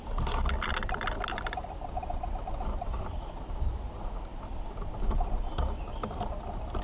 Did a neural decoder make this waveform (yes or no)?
no